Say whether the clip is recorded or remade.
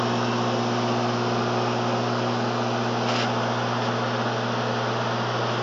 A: recorded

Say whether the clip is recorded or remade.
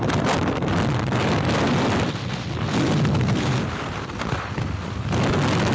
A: recorded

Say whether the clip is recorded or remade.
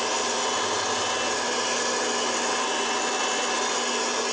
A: recorded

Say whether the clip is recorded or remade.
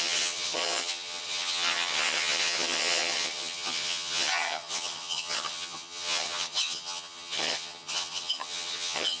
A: remade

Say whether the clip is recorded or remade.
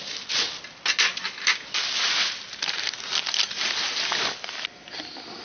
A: recorded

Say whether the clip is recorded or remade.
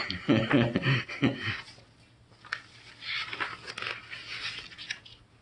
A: recorded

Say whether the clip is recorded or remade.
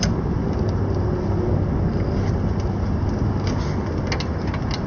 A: recorded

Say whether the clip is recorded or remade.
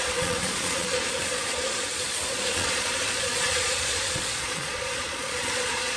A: remade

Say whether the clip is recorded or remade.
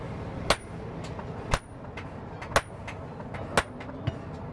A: recorded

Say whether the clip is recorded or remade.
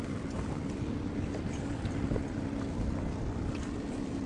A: recorded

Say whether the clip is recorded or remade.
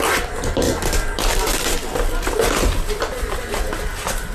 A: recorded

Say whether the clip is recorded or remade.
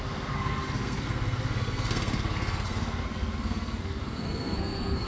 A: remade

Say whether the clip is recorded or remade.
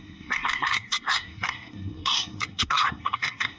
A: remade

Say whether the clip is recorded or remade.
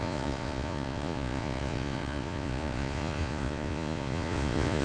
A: remade